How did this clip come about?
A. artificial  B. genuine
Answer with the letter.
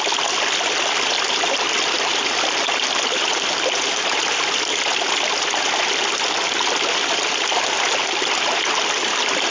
B